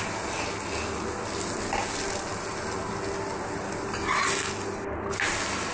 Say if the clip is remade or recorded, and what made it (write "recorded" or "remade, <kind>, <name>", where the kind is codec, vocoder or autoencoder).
recorded